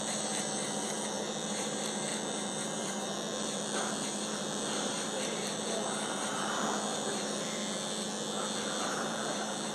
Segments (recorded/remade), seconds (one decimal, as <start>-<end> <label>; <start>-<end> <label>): 0.0-7.6 remade; 7.6-8.8 recorded; 8.8-9.7 remade